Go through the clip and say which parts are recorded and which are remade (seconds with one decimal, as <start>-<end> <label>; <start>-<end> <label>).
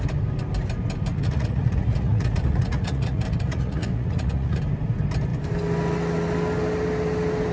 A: 0.0-1.1 recorded; 1.1-4.6 remade; 4.6-7.5 recorded